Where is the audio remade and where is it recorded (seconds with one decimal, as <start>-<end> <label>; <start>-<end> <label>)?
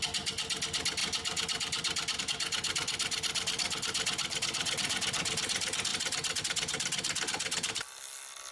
0.0-5.9 recorded; 5.9-6.4 remade; 6.4-8.5 recorded